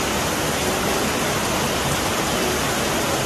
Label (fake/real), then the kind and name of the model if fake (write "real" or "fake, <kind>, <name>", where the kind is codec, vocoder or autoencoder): real